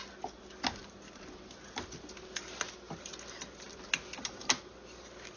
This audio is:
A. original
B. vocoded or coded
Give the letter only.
A